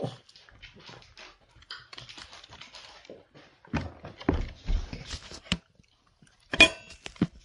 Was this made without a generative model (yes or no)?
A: yes